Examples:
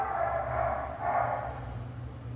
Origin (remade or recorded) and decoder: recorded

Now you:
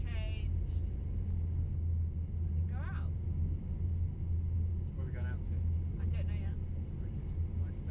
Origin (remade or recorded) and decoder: recorded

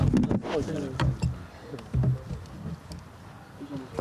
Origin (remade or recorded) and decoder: recorded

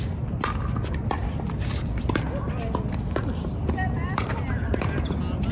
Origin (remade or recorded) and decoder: recorded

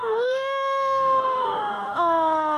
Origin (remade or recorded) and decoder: remade, autoencoder, DAC-VAE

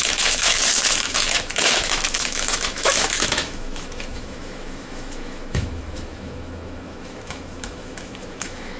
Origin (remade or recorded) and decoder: remade, autoencoder, DAC-VAE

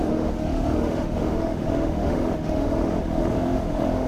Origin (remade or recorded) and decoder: remade, autoencoder, DAC-VAE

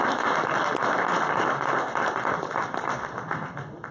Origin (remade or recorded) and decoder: recorded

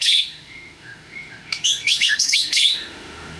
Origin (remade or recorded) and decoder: remade, autoencoder, DAC-VAE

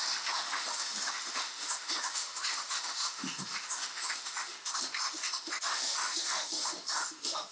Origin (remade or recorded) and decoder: remade, autoencoder, DAC-VAE